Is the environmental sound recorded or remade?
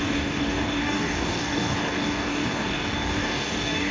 remade